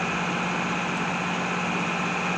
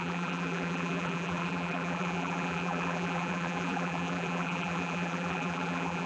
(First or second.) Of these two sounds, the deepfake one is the second